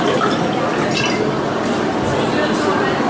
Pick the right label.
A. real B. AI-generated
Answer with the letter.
A